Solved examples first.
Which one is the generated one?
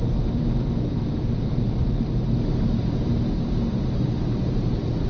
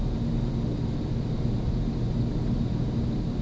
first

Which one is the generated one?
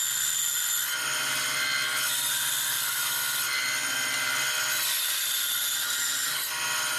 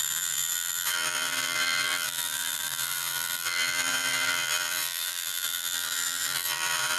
second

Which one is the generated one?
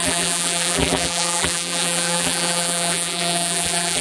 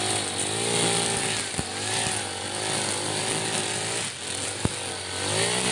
first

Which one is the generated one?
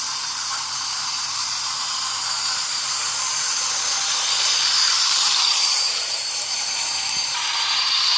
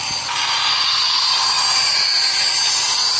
first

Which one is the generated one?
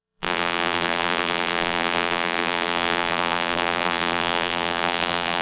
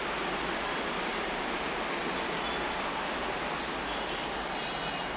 first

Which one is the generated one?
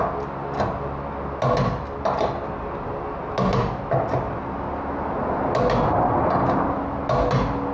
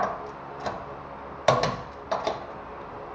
second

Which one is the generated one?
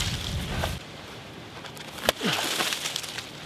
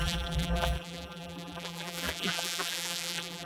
second